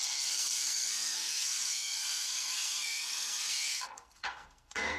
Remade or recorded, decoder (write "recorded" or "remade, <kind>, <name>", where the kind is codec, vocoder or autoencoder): remade, codec, SNAC